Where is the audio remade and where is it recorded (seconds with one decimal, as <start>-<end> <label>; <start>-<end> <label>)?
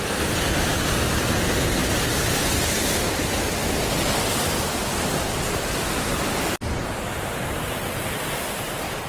0.0-9.1 recorded